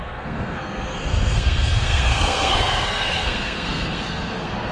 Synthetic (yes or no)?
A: yes